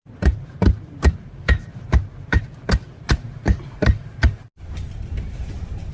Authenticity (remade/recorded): recorded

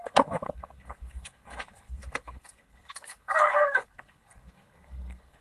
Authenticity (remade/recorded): remade